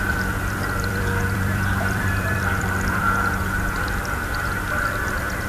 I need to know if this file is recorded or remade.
remade